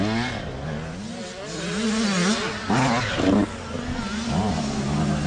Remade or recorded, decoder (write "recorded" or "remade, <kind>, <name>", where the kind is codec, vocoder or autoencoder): recorded